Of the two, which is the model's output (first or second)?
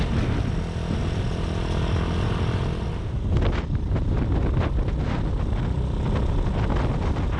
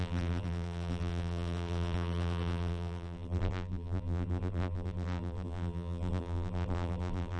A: second